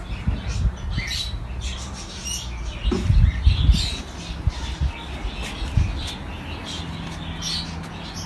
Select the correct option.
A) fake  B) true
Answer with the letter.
B